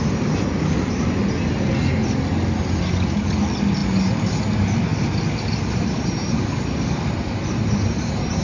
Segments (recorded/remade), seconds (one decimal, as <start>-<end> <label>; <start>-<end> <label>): 0.0-8.4 recorded